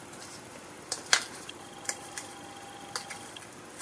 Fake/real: real